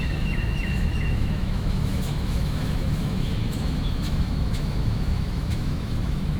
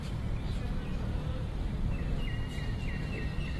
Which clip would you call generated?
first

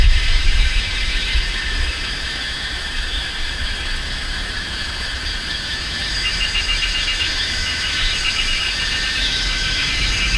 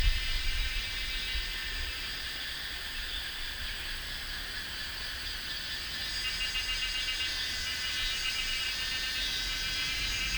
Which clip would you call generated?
first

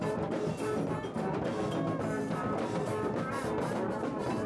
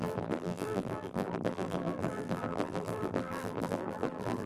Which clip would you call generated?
second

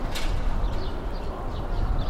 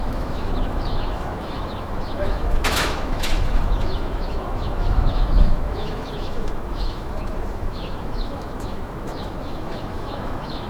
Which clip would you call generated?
second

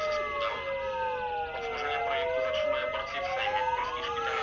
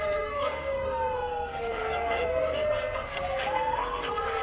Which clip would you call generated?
second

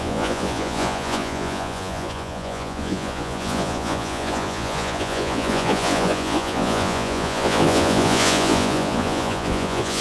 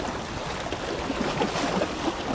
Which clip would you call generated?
first